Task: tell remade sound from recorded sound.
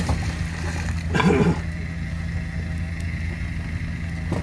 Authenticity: recorded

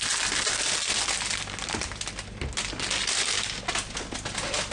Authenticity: recorded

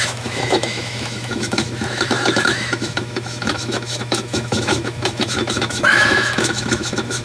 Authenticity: remade